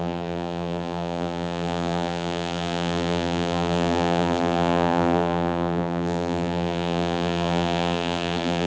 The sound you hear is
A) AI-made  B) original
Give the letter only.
A